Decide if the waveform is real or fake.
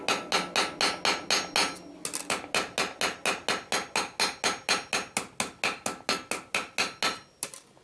real